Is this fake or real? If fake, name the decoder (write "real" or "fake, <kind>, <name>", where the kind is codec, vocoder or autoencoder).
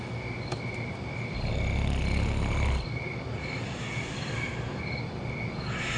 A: real